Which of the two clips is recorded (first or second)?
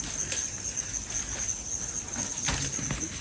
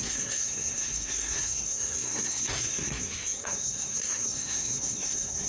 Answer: first